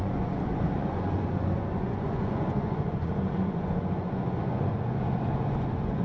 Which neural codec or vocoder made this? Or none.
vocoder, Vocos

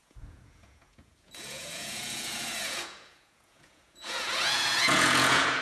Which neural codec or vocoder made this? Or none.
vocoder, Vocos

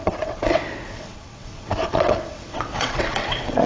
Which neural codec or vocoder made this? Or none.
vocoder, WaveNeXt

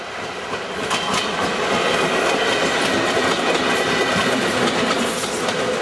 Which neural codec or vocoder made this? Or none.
none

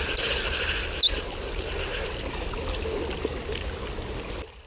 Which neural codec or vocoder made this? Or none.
none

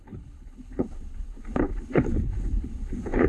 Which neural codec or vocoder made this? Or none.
codec, HILCodec